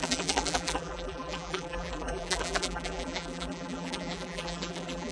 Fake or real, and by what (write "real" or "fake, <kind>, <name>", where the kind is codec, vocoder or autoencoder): fake, vocoder, BigVGAN v2